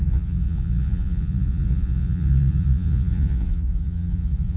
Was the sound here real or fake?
fake